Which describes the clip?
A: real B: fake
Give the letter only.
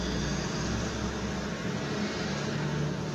A